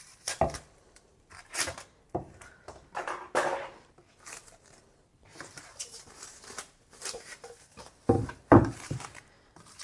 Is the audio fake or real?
fake